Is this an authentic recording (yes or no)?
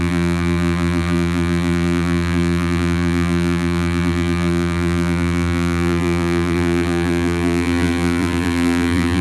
no